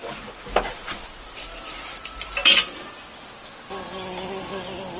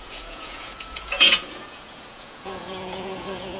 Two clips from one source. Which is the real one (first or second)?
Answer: first